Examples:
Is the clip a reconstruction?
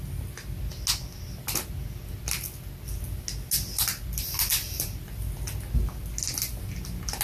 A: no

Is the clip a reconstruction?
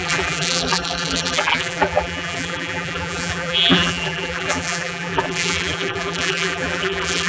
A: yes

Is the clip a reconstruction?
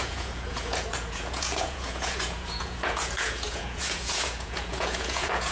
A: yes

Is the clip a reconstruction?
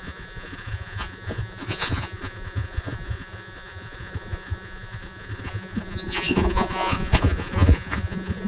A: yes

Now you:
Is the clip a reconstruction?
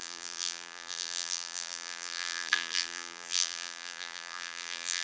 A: yes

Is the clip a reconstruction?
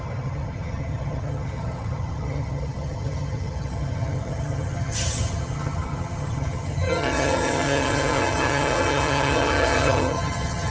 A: yes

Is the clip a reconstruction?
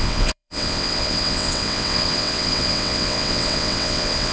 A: yes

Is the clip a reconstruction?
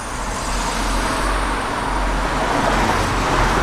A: no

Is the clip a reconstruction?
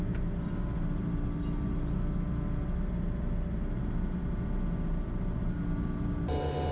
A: no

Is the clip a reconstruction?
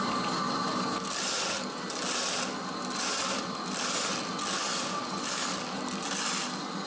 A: no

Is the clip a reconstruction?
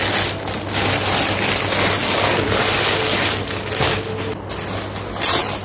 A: no